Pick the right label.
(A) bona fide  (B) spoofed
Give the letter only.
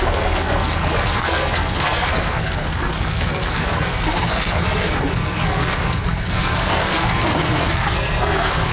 B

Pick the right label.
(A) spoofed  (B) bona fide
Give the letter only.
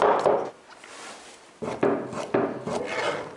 B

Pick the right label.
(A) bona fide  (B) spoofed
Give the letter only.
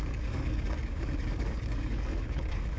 B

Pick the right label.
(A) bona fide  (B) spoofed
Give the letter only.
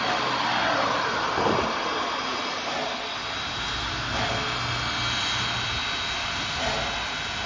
A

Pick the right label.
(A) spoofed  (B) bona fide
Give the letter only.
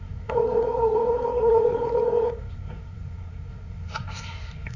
A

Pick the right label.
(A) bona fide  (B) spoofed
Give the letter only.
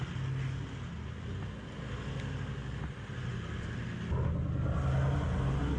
A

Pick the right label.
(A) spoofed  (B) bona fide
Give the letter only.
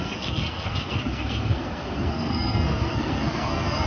A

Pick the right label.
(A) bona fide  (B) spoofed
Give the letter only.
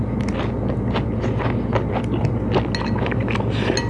A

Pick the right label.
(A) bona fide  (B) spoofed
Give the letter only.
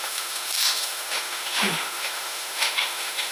B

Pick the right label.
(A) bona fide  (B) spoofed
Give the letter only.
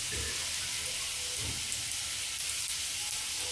A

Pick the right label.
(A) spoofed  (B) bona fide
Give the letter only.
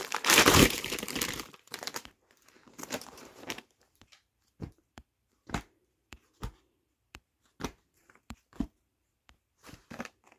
A